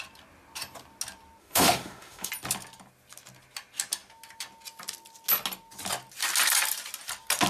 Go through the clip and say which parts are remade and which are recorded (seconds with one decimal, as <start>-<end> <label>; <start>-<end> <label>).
0.0-1.4 recorded; 1.4-2.3 remade; 2.3-7.5 recorded